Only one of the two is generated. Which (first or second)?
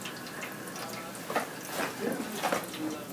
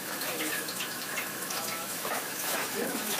second